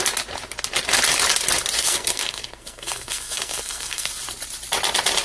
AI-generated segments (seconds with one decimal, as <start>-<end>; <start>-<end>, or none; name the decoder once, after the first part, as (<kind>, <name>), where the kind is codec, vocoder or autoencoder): 1.8-4.1 (codec, SNAC)